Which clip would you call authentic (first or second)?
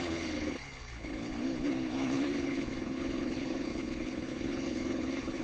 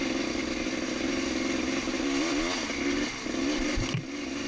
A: second